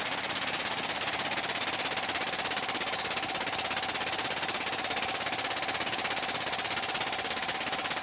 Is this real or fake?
real